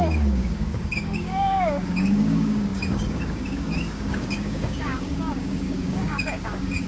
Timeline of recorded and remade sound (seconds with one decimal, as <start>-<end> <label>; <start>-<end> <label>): 0.0-6.9 remade